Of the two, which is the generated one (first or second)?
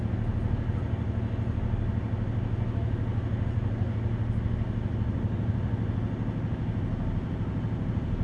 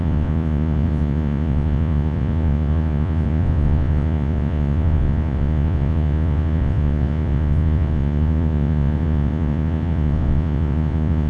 second